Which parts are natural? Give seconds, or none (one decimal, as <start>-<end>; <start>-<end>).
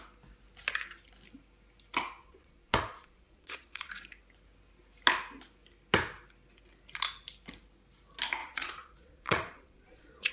0.0-2.2; 3.9-8.4